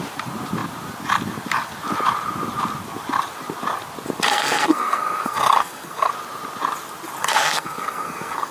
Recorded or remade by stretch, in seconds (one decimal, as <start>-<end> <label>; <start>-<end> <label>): 0.0-4.3 recorded; 4.3-6.1 remade; 6.1-7.2 recorded; 7.2-8.5 remade